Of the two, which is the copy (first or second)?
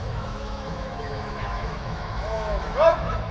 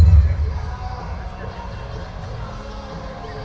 first